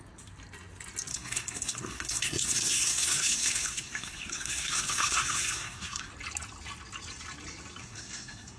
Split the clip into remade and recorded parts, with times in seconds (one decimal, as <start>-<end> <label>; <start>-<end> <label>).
0.0-1.1 recorded; 1.1-6.1 remade; 6.1-7.8 recorded; 7.8-8.6 remade